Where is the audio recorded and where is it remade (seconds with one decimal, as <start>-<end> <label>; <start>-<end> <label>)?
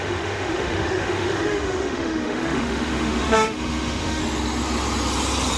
0.0-4.2 remade; 4.2-5.6 recorded